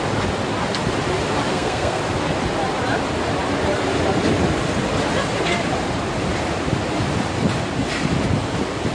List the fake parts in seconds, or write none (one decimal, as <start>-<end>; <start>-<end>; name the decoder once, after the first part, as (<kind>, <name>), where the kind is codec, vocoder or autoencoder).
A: 1.5-2.0 (codec, SNAC)